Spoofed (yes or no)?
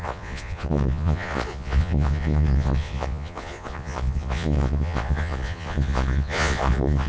yes